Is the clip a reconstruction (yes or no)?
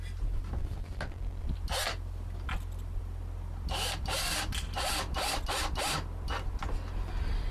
no